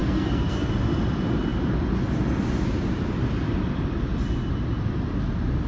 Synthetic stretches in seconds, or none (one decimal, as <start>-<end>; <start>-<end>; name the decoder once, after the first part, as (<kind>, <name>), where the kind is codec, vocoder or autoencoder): 0.0-0.7 (codec, SNAC)